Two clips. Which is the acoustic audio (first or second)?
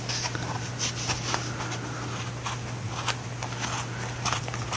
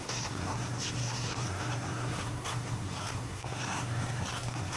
first